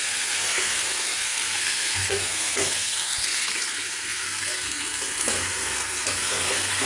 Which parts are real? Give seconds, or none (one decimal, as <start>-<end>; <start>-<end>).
none